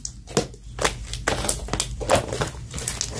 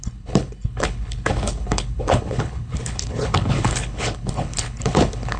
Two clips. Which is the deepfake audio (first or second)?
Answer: second